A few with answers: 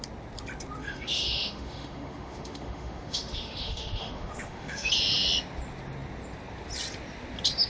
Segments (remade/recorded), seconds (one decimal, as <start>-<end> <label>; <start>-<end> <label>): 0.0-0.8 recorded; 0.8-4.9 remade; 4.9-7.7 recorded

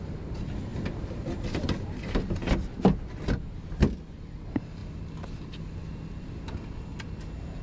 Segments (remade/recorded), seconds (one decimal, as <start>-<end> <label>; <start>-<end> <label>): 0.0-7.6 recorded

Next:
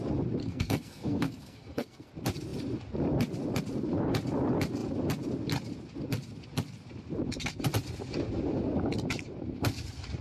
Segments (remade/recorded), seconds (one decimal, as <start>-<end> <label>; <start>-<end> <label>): 0.0-0.4 recorded; 0.4-2.1 remade; 2.1-10.2 recorded